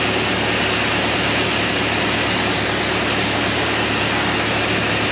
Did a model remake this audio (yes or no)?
no